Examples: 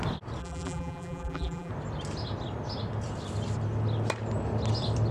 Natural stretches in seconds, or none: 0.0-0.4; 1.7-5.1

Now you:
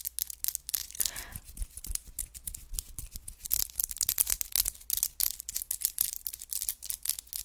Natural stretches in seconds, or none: 0.0-7.4

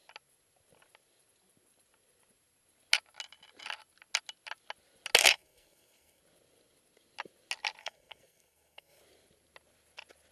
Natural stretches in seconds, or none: 0.0-5.2; 6.2-7.8; 9.0-10.3

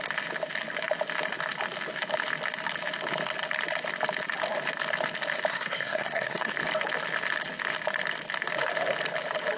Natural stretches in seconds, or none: 0.0-5.5; 6.5-9.6

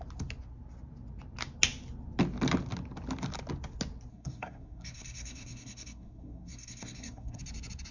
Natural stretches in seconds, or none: 0.0-4.1; 7.4-7.9